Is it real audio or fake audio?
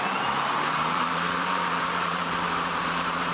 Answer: fake